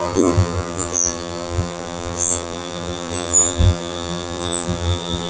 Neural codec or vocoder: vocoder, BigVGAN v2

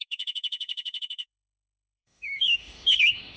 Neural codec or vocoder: autoencoder, DAC-VAE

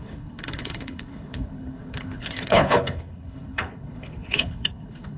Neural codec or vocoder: codec, HILCodec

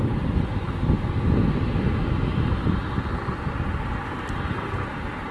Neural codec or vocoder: none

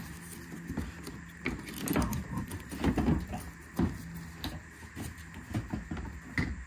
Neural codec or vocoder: none